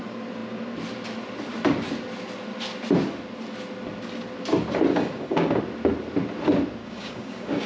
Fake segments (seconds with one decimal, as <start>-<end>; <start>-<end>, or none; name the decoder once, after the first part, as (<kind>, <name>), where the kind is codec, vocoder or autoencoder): 4.9-5.6 (codec, DAC); 6.8-7.7